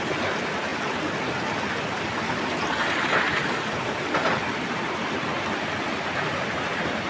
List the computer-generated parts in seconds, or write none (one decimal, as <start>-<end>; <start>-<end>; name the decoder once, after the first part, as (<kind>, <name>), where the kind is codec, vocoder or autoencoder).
none

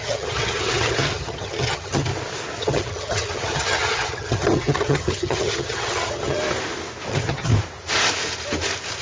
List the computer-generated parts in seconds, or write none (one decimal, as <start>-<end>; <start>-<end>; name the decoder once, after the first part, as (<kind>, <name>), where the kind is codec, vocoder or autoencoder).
0.0-2.1 (vocoder, HiFi-GAN); 2.6-6.4; 7.1-7.5

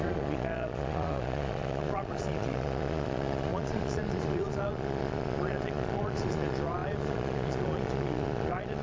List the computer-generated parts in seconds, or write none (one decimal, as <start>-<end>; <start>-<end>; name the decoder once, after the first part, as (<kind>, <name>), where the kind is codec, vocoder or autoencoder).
0.0-8.8 (vocoder, Vocos)